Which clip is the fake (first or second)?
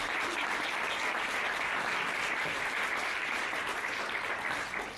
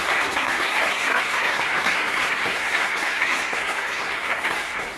second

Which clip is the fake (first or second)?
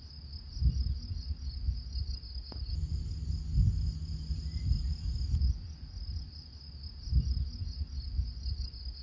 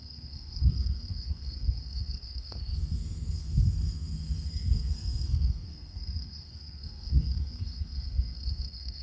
second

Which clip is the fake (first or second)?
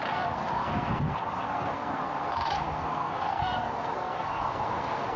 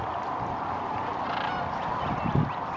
first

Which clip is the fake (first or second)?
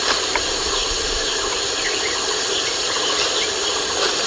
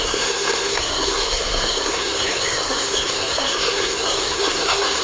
second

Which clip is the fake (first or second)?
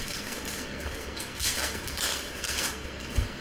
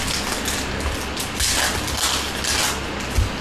first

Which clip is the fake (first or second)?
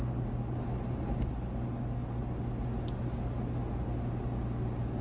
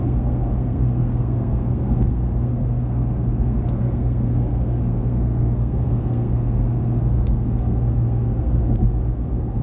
second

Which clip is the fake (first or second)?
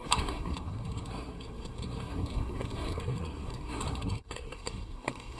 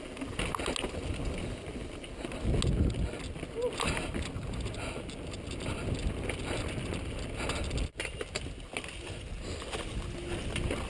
first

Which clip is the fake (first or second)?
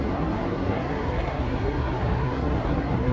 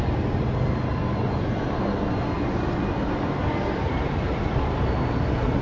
first